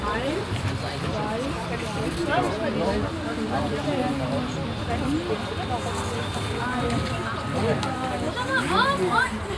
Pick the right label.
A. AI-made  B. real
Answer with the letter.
B